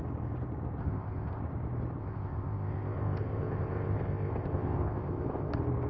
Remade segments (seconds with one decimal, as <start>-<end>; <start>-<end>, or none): 0.8-1.4; 2.0-5.5